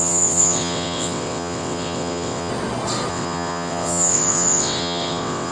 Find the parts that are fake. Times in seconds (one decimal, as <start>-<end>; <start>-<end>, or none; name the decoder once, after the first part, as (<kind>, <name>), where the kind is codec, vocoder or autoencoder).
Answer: 0.0-2.5 (vocoder, WaveNeXt); 3.1-5.5